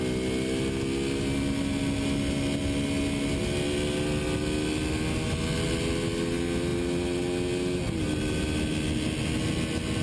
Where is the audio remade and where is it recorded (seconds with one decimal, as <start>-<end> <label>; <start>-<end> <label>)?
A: 0.0-10.0 recorded